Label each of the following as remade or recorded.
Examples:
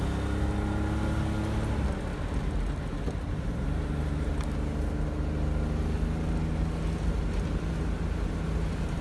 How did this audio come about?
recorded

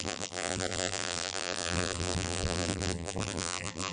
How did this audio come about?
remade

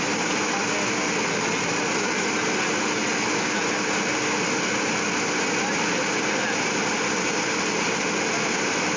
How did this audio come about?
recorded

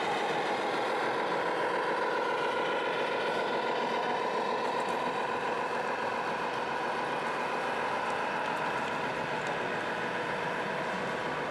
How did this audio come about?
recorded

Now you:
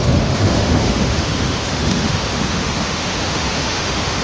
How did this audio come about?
remade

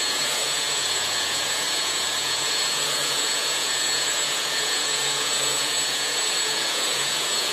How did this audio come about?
remade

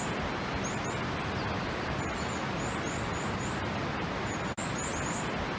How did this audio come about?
recorded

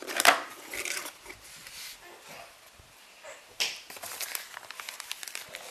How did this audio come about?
recorded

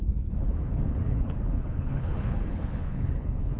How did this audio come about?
remade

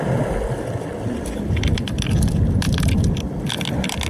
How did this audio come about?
recorded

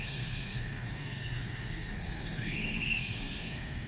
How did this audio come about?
remade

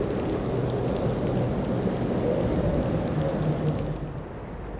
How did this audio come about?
recorded